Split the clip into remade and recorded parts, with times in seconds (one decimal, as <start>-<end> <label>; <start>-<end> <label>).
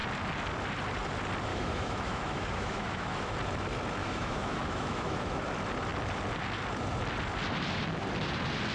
0.0-1.5 recorded; 1.5-3.3 remade; 3.3-4.0 recorded; 4.0-5.4 remade; 5.4-8.7 recorded